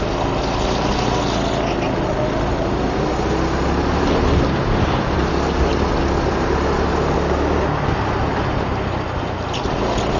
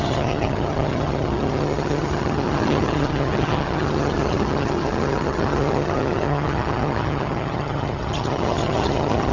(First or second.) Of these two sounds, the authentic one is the first